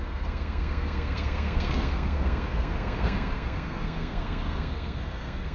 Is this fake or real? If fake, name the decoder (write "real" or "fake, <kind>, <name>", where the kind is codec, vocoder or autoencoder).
fake, codec, SNAC